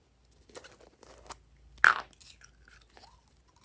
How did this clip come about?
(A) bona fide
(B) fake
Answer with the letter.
A